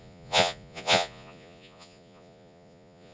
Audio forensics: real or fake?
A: fake